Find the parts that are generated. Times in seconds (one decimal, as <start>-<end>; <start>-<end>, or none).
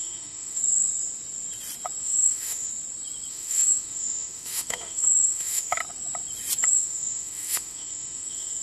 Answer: 0.0-0.6; 2.0-2.7; 3.3-5.8; 6.7-8.6